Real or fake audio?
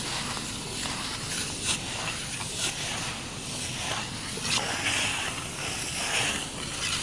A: real